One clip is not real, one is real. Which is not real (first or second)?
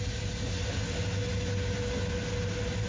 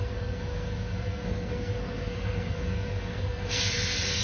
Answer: second